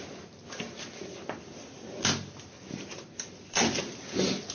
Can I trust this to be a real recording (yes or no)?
yes